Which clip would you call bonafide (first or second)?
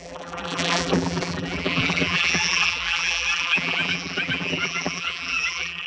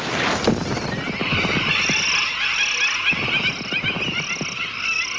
second